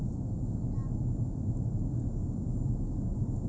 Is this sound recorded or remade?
recorded